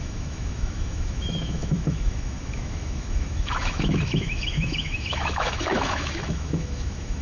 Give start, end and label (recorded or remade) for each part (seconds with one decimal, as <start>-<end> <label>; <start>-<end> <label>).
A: 0.0-7.2 remade